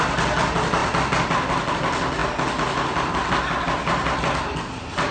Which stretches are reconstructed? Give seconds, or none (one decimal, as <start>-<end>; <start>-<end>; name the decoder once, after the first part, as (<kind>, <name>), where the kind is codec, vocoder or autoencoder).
none